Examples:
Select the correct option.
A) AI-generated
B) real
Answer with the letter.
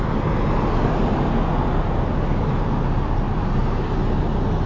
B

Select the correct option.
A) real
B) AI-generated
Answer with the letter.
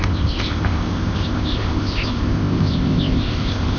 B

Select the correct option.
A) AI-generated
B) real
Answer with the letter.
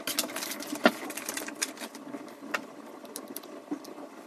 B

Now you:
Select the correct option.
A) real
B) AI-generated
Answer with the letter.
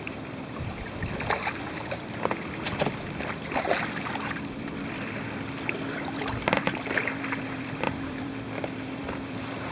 B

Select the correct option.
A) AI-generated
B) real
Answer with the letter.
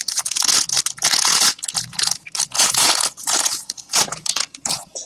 A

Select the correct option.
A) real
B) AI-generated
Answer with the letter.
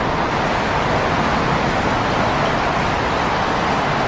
A